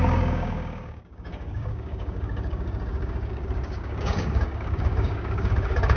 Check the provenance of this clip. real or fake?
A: fake